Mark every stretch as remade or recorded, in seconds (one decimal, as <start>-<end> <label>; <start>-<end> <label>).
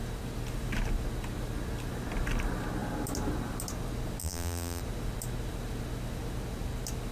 0.0-4.2 recorded; 4.2-4.8 remade; 4.8-7.1 recorded